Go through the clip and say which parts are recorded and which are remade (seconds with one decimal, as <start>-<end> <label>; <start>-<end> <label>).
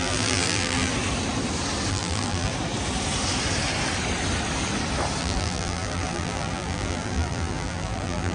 0.0-0.9 remade; 0.9-1.9 recorded; 1.9-2.5 remade; 2.5-5.2 recorded; 5.2-8.3 remade